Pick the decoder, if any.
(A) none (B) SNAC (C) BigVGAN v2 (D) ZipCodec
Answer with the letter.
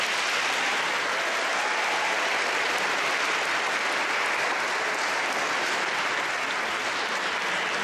A